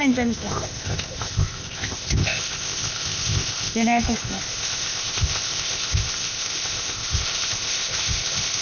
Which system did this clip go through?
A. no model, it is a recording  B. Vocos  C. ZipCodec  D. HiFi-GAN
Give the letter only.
C